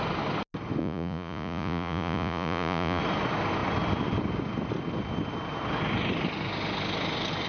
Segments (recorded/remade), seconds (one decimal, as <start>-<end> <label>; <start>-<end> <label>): 0.0-0.8 recorded; 0.8-3.0 remade; 3.0-7.5 recorded